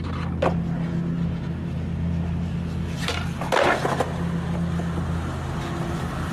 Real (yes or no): yes